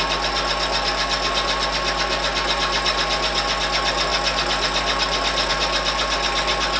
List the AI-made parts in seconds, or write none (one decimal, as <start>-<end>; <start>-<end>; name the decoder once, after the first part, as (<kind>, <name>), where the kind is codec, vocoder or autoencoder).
none